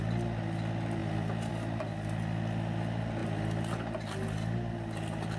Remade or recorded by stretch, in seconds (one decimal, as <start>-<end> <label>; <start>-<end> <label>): 0.0-5.4 recorded